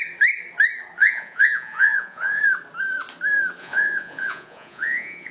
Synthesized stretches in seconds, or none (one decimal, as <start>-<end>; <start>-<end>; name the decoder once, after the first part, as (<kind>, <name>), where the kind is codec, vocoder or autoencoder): 1.0-2.4 (vocoder, Vocos); 3.6-5.3